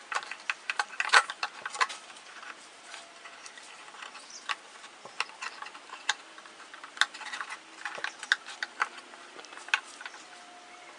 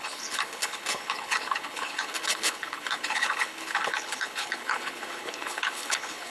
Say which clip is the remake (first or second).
second